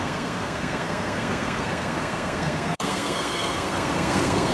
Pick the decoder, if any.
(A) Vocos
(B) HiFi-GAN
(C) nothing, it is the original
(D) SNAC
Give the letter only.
D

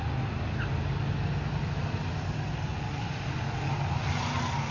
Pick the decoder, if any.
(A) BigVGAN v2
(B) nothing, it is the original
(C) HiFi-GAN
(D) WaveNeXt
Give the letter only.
B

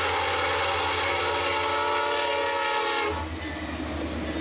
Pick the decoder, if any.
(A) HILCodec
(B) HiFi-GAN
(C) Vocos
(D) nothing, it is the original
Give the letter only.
D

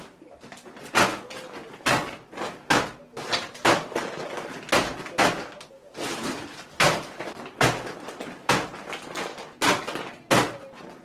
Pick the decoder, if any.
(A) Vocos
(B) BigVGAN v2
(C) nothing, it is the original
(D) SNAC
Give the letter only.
C